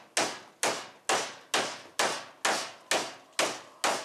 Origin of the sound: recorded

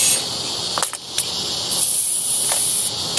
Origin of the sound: recorded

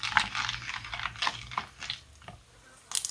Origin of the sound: recorded